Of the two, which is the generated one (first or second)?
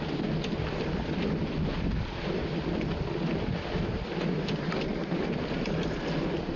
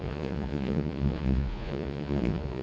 second